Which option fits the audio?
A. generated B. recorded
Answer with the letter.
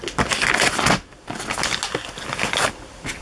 B